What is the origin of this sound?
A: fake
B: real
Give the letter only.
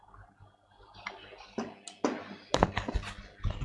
B